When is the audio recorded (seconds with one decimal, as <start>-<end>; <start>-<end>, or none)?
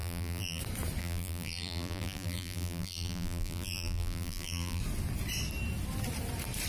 0.6-1.0; 4.8-6.7